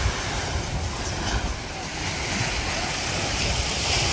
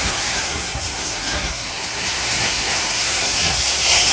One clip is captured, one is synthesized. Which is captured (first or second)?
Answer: first